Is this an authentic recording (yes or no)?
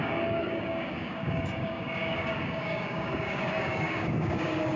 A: no